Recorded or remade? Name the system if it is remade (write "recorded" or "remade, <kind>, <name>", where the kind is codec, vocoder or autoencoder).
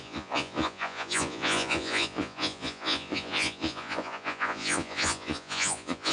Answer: remade, vocoder, Vocos